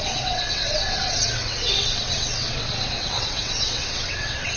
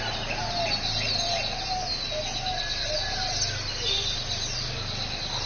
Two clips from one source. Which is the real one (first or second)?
second